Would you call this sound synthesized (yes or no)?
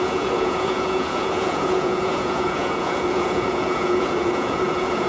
yes